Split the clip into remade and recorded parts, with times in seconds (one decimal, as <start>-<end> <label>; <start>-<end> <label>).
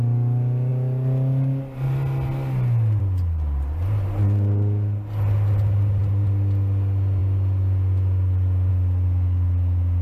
0.0-10.0 recorded